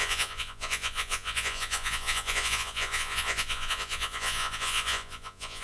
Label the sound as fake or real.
fake